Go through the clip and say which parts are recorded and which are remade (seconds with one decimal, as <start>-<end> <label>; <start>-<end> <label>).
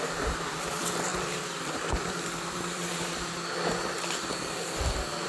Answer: 0.0-5.3 remade